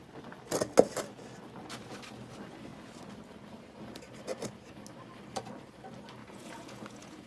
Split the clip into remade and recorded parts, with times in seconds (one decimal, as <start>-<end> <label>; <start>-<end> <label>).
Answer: 0.0-6.2 recorded; 6.2-7.3 remade